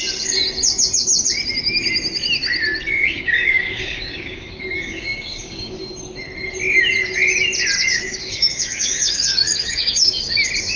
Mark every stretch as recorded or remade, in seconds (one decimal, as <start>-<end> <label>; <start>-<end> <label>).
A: 0.0-3.0 recorded; 3.0-5.8 remade; 5.8-7.9 recorded; 7.9-10.3 remade; 10.3-10.8 recorded